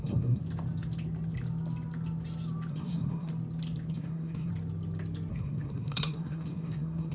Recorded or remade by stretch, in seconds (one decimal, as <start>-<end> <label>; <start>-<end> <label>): 0.0-0.4 remade; 0.4-2.7 recorded; 2.7-3.3 remade; 3.3-3.9 recorded; 3.9-4.5 remade; 4.5-5.3 recorded; 5.3-7.1 remade